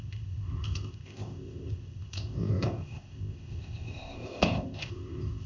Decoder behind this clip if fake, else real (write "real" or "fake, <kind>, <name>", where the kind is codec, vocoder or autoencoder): fake, codec, ZipCodec